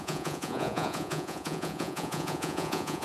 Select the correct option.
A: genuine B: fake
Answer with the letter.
B